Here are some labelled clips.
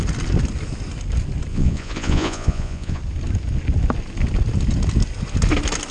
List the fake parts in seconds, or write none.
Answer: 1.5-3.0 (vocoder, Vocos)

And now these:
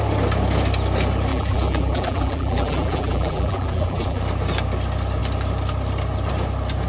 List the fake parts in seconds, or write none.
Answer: 1.3-4.2 (vocoder, BigVGAN v2)

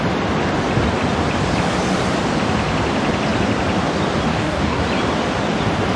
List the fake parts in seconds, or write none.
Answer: 4.3-4.8 (codec, DAC)

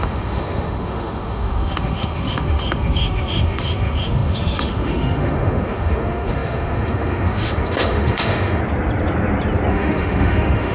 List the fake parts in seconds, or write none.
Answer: 0.0-8.6 (autoencoder, DAC-VAE); 9.7-10.7

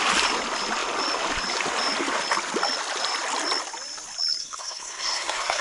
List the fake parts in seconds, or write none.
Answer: 4.4-5.6 (codec, SNAC)